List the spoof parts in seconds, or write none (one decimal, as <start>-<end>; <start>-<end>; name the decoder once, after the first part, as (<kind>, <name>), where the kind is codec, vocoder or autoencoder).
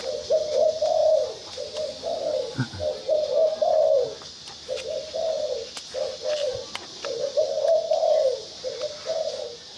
1.0-1.5 (vocoder, BigVGAN v2)